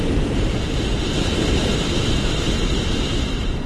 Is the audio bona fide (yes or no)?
no